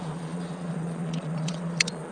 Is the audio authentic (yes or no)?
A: no